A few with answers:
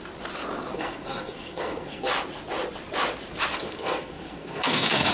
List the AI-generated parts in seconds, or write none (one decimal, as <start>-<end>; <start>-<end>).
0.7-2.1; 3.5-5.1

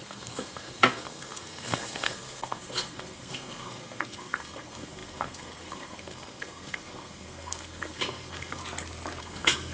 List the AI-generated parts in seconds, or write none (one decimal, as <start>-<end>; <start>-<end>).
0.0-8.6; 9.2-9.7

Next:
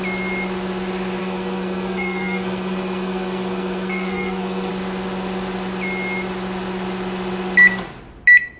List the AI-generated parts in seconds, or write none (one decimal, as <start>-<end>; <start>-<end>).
1.2-4.7

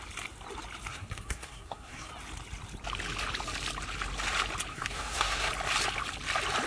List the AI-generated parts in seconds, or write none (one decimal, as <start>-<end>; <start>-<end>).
0.9-2.1; 4.7-5.5

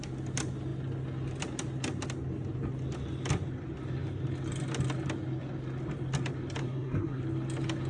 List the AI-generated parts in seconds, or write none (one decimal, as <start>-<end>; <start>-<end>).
6.6-7.2

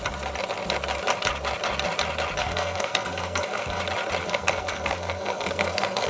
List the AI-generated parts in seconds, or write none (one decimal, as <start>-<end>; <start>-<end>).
2.4-3.8; 4.2-6.1

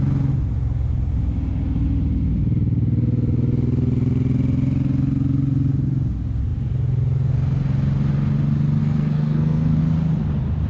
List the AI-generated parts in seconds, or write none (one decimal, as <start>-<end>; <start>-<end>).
8.8-9.8

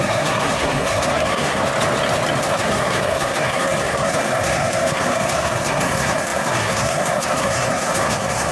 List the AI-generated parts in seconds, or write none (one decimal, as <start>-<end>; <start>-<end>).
0.0-1.6; 2.4-8.5